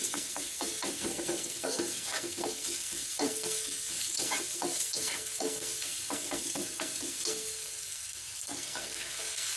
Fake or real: fake